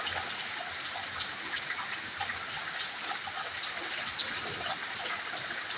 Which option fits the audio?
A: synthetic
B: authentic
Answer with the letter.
B